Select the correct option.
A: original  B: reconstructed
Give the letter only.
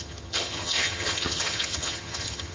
B